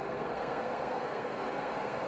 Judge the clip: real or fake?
fake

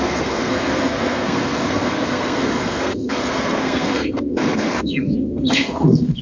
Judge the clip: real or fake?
fake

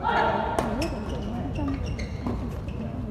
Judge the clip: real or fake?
real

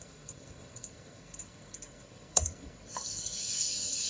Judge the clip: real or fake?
fake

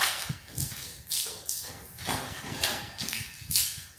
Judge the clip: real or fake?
fake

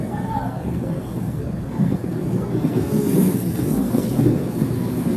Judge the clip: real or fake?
fake